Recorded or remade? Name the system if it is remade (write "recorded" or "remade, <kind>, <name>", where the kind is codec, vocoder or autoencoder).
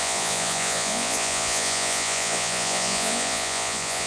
remade, vocoder, Vocos